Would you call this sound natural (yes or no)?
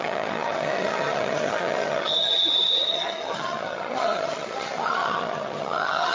no